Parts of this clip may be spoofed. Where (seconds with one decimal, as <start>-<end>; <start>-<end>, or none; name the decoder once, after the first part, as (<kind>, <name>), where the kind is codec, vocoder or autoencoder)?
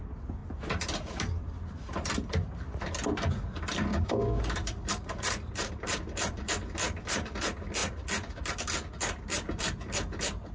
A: 3.9-4.4 (codec, DAC)